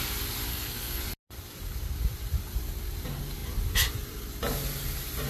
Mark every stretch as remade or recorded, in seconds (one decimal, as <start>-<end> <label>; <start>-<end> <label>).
0.0-0.5 recorded; 0.5-1.0 remade; 1.0-5.3 recorded